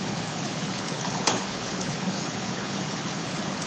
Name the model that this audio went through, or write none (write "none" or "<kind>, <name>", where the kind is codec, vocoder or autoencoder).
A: codec, HILCodec